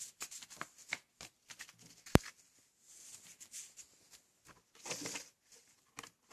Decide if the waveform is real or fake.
real